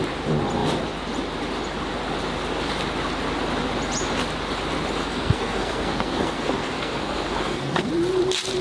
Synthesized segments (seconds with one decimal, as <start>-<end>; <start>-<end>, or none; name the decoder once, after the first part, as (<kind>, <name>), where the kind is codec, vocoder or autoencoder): 5.0-7.9 (codec, SNAC)